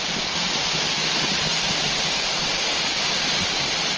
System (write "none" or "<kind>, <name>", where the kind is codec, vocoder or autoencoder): none